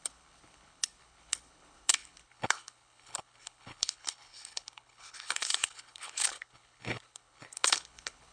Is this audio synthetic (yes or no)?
yes